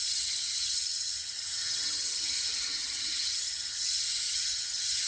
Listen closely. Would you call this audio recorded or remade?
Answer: remade